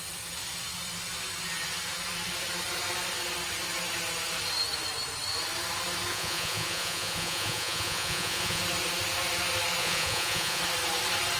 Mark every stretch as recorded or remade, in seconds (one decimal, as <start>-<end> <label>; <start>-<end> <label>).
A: 0.0-6.1 recorded; 6.1-8.6 remade; 8.6-9.8 recorded; 9.8-10.6 remade; 10.6-11.4 recorded

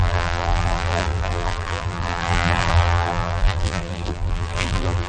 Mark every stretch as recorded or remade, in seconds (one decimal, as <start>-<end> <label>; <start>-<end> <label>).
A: 0.0-5.1 remade

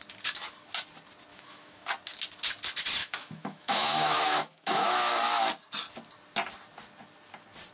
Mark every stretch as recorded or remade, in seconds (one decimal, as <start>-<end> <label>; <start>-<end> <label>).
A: 0.0-1.3 recorded; 1.3-1.9 remade; 1.9-3.0 recorded; 3.0-5.1 remade; 5.1-7.7 recorded

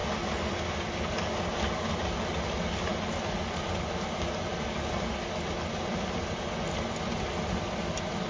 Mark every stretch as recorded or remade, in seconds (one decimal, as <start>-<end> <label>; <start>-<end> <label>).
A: 0.0-8.3 recorded

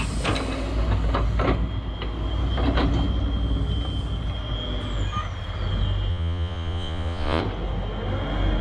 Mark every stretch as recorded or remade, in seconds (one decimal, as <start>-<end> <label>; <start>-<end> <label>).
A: 0.0-6.1 recorded; 6.1-7.4 remade; 7.4-8.6 recorded